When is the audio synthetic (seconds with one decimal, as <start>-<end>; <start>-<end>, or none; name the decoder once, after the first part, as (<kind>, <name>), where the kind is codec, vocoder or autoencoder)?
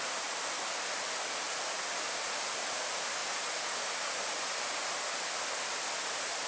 none